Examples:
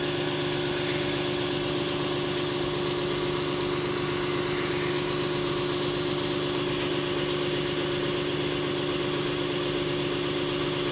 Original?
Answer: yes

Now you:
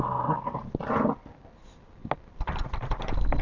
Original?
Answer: yes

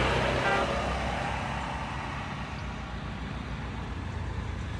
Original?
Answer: yes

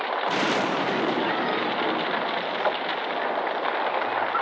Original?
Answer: yes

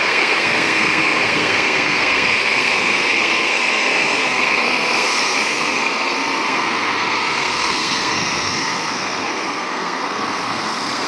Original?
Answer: no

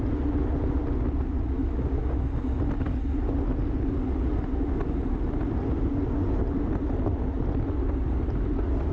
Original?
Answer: yes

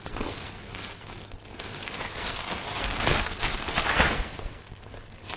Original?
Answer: no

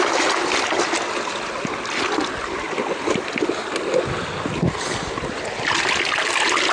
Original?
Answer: yes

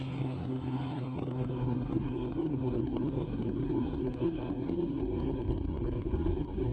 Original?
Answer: no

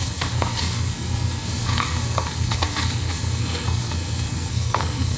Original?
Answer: no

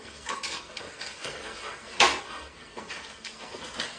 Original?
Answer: no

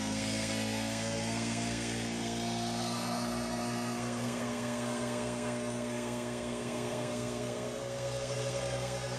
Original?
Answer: no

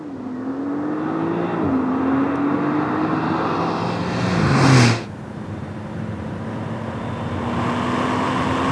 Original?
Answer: yes